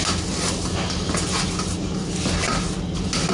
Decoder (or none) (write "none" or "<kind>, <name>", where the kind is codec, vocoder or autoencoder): none